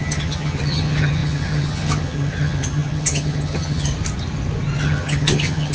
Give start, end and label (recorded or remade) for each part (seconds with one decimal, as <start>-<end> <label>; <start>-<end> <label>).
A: 0.0-3.9 remade; 3.9-4.8 recorded; 4.8-5.7 remade